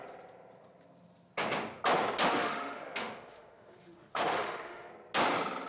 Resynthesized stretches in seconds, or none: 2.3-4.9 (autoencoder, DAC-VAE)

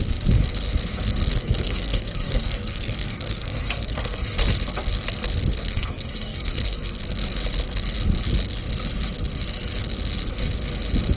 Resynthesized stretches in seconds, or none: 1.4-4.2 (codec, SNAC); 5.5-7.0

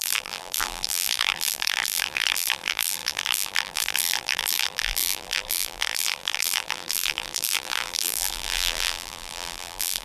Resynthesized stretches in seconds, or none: 0.0-10.0 (vocoder, BigVGAN v2)

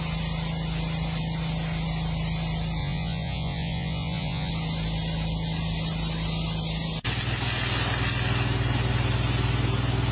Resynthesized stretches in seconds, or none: 2.8-4.5 (vocoder, Vocos)

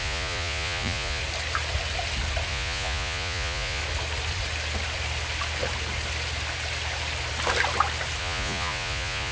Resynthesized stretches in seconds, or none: 0.0-1.2 (vocoder, Vocos); 2.5-3.8; 8.2-9.3